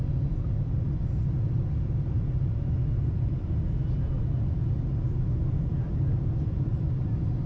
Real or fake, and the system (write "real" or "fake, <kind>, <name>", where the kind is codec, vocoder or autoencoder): real